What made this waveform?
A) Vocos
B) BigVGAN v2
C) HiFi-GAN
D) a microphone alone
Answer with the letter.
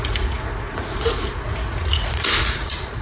A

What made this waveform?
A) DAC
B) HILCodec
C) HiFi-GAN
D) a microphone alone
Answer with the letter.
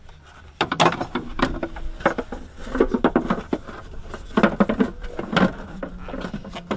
D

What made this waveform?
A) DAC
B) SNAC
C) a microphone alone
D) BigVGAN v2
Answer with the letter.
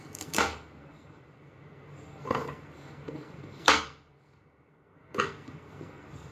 B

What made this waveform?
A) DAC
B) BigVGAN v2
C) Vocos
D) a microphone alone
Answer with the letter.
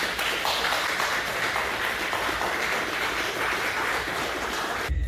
D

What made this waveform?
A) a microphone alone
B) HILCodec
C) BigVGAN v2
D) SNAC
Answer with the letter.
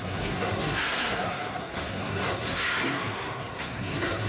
D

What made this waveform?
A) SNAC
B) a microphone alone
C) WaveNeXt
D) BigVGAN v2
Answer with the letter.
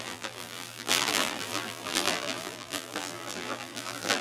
D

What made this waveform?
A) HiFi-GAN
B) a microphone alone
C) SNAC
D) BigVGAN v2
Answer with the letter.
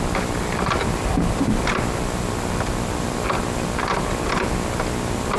B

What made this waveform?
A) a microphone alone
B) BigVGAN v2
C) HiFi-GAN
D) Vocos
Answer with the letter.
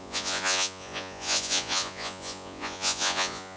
D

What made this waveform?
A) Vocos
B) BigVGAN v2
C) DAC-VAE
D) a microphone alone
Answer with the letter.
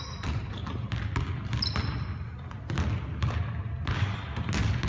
D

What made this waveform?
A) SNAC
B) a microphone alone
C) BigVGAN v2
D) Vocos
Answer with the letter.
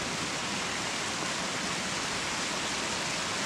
B